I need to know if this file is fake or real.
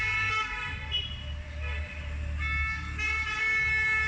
real